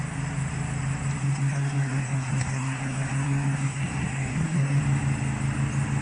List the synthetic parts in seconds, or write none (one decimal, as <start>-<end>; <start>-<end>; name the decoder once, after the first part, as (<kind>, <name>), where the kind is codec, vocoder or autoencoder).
1.2-4.8 (codec, SNAC)